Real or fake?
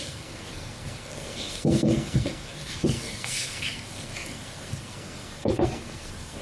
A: fake